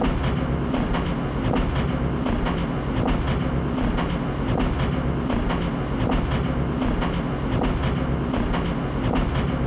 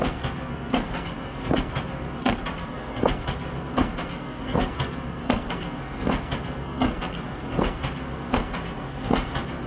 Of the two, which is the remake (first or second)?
second